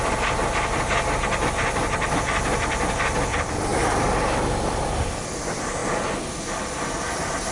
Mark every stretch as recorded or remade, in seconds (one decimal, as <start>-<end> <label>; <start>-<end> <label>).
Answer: 0.0-5.8 remade; 5.8-7.5 recorded